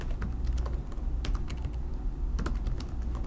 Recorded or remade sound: recorded